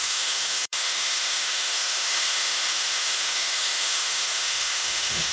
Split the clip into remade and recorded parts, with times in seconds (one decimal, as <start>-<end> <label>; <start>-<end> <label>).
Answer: 0.0-5.3 remade